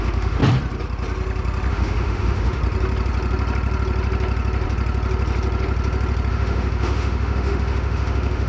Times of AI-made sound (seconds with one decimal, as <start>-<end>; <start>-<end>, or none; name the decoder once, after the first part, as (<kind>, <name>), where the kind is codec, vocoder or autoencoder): 0.0-0.4 (autoencoder, DAC-VAE); 1.7-2.6; 6.3-8.5